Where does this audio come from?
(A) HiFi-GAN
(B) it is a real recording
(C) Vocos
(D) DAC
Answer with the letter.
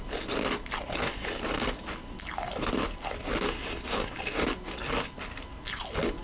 B